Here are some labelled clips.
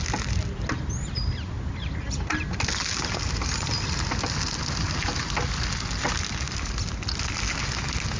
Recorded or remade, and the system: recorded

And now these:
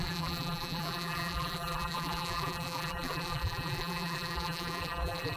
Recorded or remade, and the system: remade, vocoder, BigVGAN v2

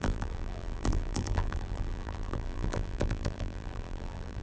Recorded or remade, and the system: remade, vocoder, BigVGAN v2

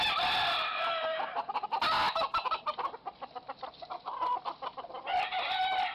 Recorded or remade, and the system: remade, vocoder, BigVGAN v2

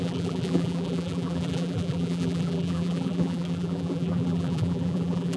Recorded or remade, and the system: remade, vocoder, BigVGAN v2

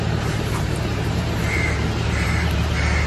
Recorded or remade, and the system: remade, vocoder, BigVGAN v2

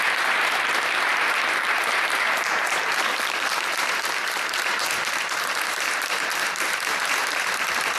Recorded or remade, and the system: remade, vocoder, BigVGAN v2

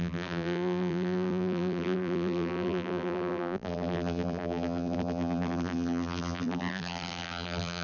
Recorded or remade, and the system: remade, vocoder, BigVGAN v2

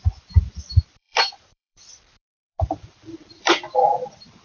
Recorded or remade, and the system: remade, vocoder, BigVGAN v2